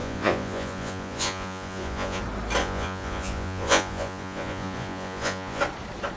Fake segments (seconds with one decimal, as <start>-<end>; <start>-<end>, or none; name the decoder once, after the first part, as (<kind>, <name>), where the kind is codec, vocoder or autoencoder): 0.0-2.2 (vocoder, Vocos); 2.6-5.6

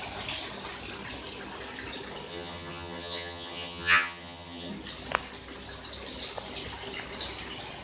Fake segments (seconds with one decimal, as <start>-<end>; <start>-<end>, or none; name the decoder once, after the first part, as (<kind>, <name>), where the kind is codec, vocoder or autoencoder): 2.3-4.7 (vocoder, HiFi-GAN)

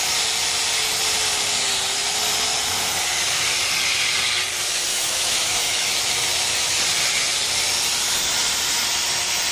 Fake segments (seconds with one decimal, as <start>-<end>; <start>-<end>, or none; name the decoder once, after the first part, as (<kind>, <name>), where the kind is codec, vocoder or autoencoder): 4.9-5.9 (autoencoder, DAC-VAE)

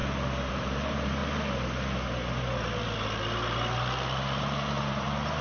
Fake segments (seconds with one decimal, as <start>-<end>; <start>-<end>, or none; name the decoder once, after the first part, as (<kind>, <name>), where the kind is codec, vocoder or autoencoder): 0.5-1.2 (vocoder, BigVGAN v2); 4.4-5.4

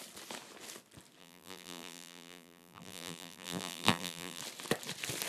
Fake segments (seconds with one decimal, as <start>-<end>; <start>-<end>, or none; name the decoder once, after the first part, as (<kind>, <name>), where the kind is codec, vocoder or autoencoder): 1.2-4.4 (vocoder, BigVGAN v2)

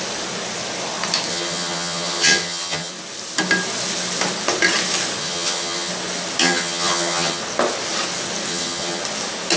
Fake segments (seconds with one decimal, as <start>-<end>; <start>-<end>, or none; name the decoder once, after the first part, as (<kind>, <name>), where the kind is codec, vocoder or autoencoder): 1.3-2.9 (vocoder, HiFi-GAN); 5.2-5.9; 6.4-7.4; 8.5-9.0